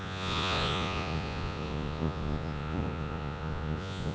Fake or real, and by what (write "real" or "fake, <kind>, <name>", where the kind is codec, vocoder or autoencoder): fake, vocoder, Vocos